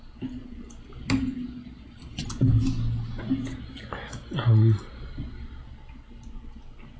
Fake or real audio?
real